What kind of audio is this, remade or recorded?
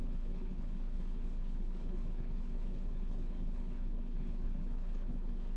remade